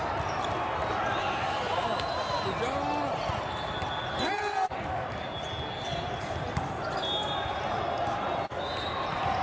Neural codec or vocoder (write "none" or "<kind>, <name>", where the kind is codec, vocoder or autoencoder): none